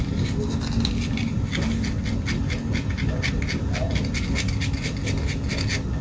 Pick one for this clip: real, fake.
real